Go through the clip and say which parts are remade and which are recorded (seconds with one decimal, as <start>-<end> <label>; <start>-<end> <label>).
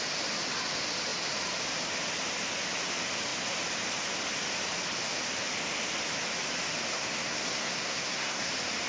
0.0-6.9 recorded; 6.9-8.5 remade; 8.5-8.9 recorded